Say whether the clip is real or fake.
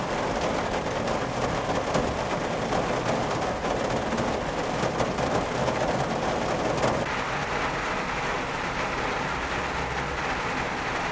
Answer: real